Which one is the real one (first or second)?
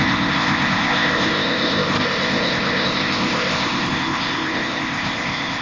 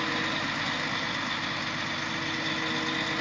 second